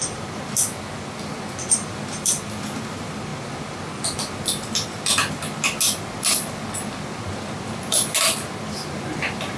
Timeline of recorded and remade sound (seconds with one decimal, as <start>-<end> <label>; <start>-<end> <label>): 0.0-9.6 recorded